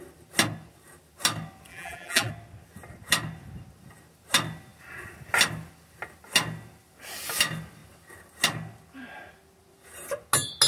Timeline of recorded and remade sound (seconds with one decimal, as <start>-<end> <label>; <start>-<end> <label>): 0.0-1.7 recorded; 1.7-2.3 remade; 2.3-10.7 recorded